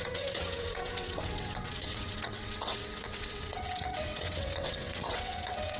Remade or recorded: remade